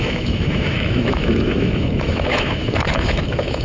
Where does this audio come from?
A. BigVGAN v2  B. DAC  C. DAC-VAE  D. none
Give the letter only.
C